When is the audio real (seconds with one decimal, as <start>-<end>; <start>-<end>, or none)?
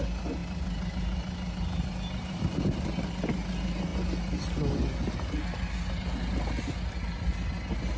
0.0-8.0